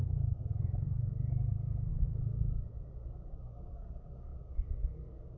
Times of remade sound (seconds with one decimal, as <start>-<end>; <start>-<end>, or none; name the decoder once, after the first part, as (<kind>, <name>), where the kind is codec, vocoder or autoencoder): 0.0-2.6 (codec, SNAC); 3.4-5.4